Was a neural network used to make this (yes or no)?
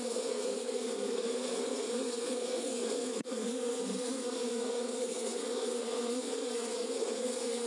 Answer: yes